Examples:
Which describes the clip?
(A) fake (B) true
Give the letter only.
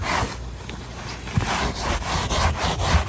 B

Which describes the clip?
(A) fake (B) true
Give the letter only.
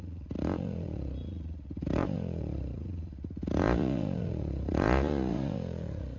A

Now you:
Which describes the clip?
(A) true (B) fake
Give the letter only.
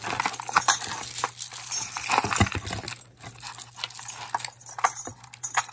A